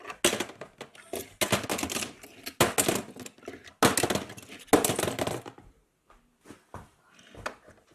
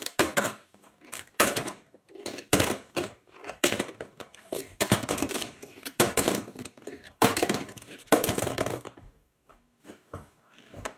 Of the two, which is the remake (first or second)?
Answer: second